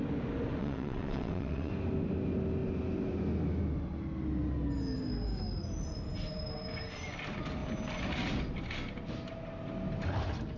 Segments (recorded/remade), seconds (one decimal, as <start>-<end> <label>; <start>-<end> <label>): 0.0-0.6 recorded; 0.6-1.7 remade; 1.7-10.6 recorded